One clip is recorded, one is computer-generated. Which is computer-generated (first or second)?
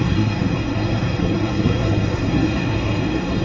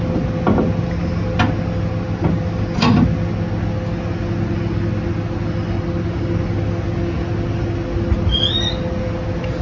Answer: first